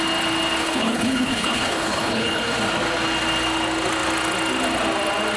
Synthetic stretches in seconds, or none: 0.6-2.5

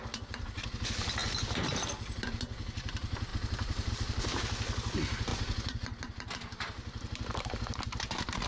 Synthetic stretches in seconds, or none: none

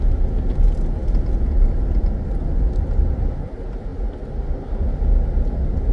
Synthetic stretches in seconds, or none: none

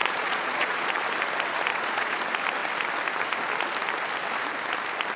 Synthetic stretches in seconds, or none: 0.0-0.9; 1.7-2.2

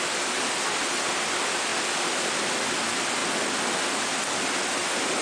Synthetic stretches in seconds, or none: 1.7-2.6

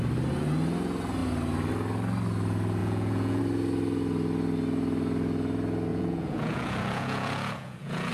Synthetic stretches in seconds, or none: 2.8-3.4; 5.9-8.1

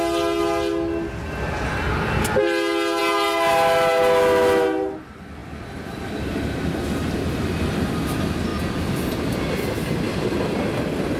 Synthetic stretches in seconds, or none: none

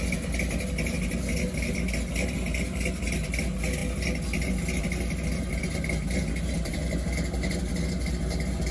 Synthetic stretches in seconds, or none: none